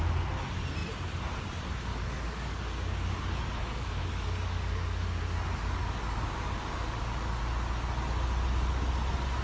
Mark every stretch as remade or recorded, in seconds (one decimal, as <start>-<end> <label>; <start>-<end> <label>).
0.0-1.9 recorded; 1.9-5.2 remade; 5.2-5.8 recorded; 5.8-7.4 remade; 7.4-9.4 recorded